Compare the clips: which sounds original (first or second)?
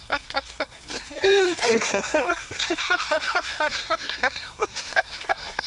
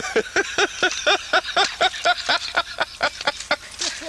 second